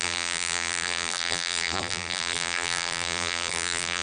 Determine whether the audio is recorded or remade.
remade